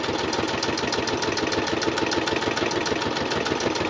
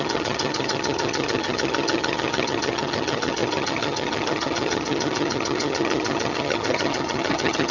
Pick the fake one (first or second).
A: second